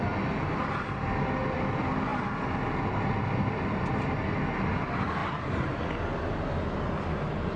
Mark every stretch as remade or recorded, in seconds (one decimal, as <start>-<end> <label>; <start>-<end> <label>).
0.0-7.6 recorded